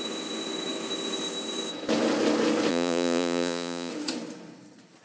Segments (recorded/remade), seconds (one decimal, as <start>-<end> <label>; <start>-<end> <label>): 0.0-2.7 recorded; 2.7-3.9 remade; 3.9-5.0 recorded